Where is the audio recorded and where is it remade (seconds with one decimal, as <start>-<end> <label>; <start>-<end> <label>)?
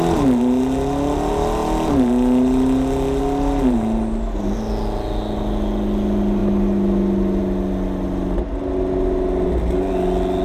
0.0-10.4 recorded